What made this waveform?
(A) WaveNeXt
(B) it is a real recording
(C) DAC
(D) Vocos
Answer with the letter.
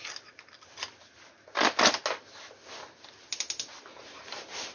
B